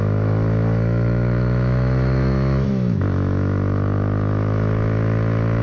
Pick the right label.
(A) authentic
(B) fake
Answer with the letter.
B